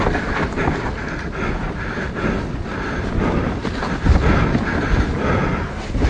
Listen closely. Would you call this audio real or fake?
real